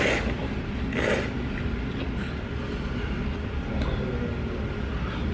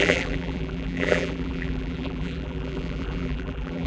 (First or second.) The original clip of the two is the first